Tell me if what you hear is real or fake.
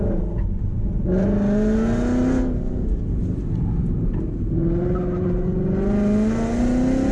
real